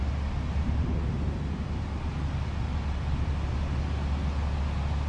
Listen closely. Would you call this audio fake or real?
real